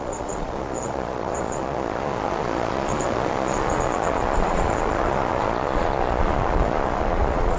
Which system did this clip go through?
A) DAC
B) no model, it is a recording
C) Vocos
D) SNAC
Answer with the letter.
C